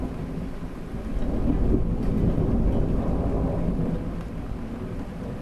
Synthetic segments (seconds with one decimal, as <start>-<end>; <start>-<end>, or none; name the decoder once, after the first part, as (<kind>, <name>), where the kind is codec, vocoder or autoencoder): none